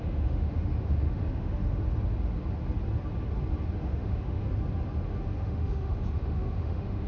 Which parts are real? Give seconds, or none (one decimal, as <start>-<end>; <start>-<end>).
1.8-3.8; 4.4-5.4